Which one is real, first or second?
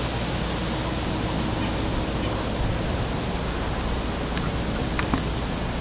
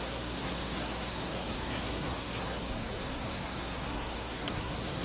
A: first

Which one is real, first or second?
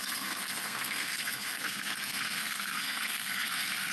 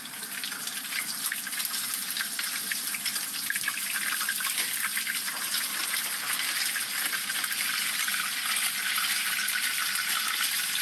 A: second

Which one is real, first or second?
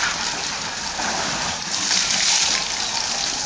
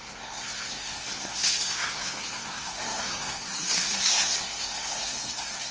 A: first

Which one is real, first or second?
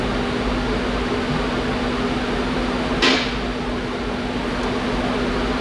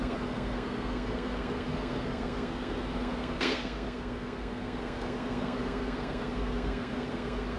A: first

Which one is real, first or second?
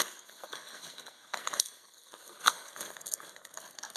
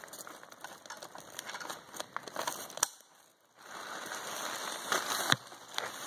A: second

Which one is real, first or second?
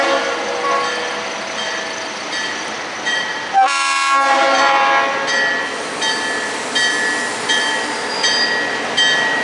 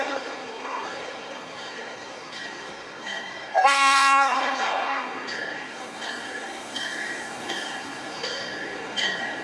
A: first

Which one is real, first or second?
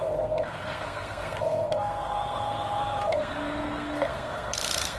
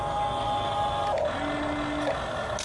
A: second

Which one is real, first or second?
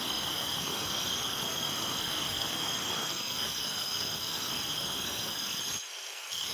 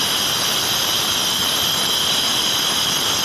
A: second